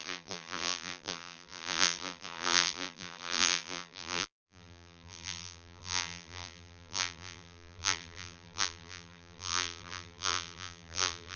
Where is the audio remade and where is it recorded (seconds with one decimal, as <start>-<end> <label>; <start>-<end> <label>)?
0.0-11.4 remade